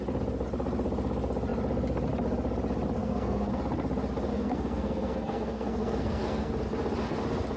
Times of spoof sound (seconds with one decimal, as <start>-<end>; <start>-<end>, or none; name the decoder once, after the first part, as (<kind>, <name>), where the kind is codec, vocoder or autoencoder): 3.0-3.6 (codec, SNAC); 4.3-6.5